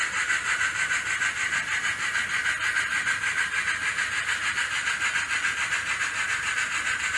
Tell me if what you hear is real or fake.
real